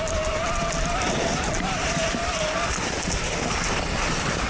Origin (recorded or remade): recorded